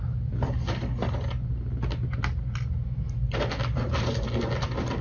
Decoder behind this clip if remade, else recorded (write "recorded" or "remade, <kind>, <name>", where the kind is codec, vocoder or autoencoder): recorded